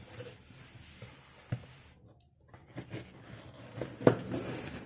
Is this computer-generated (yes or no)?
no